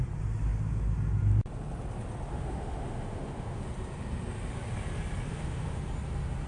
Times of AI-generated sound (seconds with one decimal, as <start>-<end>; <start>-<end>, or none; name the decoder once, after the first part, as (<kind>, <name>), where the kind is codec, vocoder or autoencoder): 2.3-3.6 (autoencoder, DAC-VAE); 5.3-5.8